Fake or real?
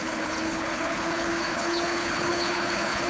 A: fake